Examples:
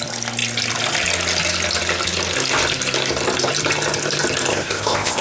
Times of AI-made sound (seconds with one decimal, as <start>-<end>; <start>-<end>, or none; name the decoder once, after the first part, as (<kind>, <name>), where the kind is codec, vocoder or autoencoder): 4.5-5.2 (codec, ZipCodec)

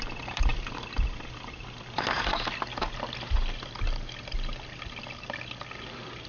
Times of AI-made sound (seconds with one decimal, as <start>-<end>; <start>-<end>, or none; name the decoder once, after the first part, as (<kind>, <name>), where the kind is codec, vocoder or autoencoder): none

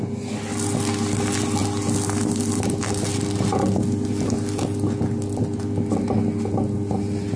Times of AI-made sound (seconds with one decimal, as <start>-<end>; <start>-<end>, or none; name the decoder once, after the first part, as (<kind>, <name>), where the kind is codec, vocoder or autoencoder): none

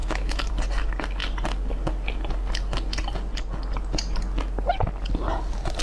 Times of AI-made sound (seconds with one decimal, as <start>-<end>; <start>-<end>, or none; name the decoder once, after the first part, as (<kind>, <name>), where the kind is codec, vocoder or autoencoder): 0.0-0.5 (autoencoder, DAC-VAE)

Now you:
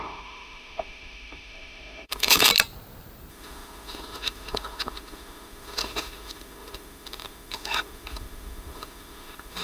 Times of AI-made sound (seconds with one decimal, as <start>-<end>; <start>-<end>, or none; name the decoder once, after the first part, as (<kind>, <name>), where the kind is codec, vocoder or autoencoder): 0.0-2.5 (autoencoder, DAC-VAE); 3.3-9.6

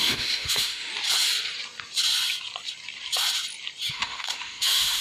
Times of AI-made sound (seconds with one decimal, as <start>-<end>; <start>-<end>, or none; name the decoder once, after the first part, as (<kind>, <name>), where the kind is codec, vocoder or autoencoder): 0.0-0.9 (autoencoder, DAC-VAE); 3.9-5.0